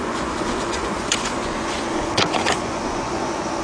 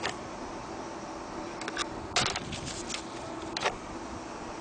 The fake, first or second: first